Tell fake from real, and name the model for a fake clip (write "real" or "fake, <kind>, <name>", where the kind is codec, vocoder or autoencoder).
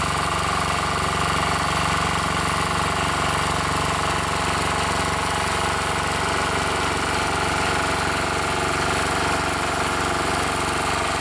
real